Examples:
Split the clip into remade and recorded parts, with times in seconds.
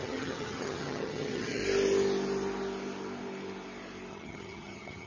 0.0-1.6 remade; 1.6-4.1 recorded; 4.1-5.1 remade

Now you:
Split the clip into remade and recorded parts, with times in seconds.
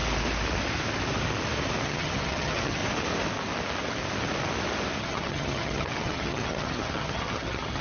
0.0-1.8 recorded; 1.8-2.8 remade; 2.8-5.0 recorded; 5.0-7.8 remade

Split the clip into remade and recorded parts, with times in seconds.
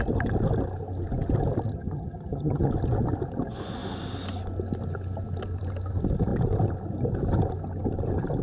0.0-1.7 recorded; 1.7-2.7 remade; 2.7-8.4 recorded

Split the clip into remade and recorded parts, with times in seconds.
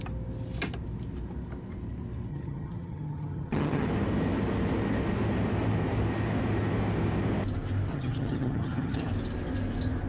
0.0-2.3 recorded; 2.3-3.9 remade; 3.9-7.9 recorded; 7.9-9.1 remade; 9.1-10.1 recorded